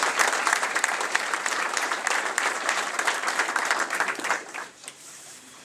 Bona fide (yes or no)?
no